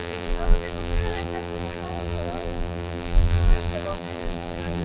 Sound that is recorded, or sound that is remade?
remade